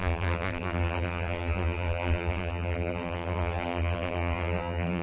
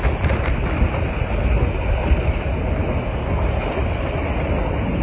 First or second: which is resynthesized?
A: first